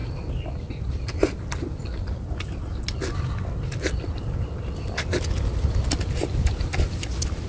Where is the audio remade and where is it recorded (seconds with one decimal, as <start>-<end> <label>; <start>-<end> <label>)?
0.0-7.5 recorded